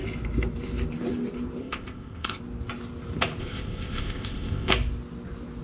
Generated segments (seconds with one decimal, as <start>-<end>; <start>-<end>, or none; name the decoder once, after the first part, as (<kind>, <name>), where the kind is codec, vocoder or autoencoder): 1.6-2.4 (codec, ZipCodec); 3.4-4.7